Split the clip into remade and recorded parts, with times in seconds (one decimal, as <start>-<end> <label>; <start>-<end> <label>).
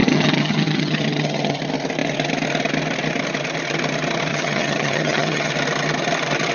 0.0-1.6 remade; 1.6-4.3 recorded; 4.3-5.5 remade; 5.5-6.5 recorded